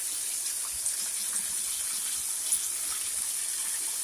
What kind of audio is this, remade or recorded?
recorded